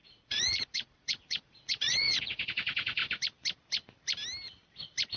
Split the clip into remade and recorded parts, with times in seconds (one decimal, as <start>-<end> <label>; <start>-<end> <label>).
0.0-3.0 remade; 3.0-5.2 recorded